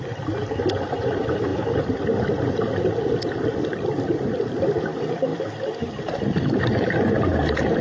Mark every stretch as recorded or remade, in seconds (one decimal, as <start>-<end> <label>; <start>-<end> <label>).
0.0-1.5 recorded; 1.5-2.5 remade; 2.5-5.3 recorded; 5.3-6.9 remade; 6.9-7.8 recorded

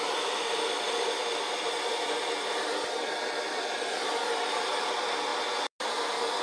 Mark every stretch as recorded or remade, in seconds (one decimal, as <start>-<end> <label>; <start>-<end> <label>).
0.0-5.3 remade; 5.3-5.9 recorded; 5.9-6.4 remade

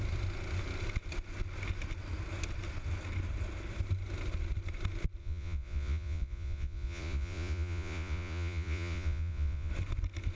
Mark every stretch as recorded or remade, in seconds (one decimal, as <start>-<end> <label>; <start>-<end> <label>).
0.0-5.2 recorded; 5.2-9.7 remade; 9.7-10.3 recorded

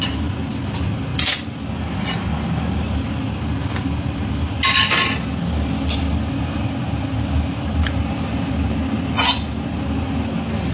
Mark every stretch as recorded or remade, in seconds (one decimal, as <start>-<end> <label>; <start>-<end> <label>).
0.0-10.7 recorded

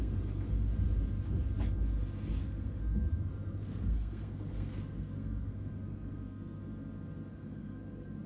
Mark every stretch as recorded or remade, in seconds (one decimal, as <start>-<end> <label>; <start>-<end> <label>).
0.0-0.7 remade; 0.7-2.3 recorded; 2.3-6.6 remade; 6.6-7.3 recorded; 7.3-8.3 remade

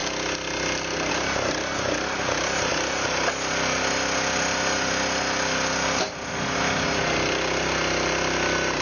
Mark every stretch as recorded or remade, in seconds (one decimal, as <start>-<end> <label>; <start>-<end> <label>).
0.0-8.8 recorded

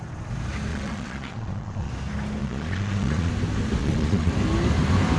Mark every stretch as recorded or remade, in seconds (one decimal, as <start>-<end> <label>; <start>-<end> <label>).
0.0-0.7 recorded; 0.7-1.9 remade; 1.9-2.4 recorded; 2.4-3.3 remade; 3.3-3.8 recorded; 3.8-4.3 remade; 4.3-5.2 recorded